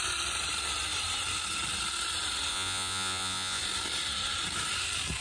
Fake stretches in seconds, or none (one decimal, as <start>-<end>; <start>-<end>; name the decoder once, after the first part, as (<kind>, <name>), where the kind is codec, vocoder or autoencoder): 2.5-3.6 (vocoder, Vocos)